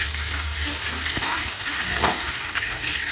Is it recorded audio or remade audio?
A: remade